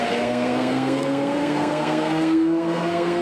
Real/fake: fake